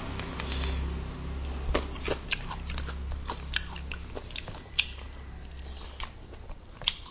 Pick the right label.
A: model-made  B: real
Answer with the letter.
B